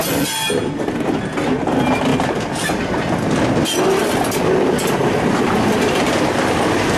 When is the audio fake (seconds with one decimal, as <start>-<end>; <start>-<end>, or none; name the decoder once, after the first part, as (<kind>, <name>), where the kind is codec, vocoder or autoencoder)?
none